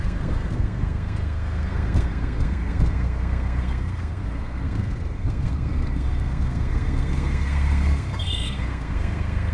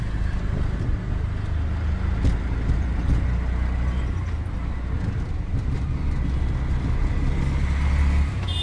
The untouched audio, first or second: second